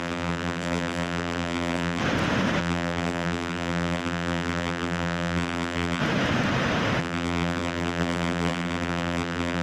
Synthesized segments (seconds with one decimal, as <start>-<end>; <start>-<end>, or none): 0.0-2.0; 2.6-6.0; 7.0-9.6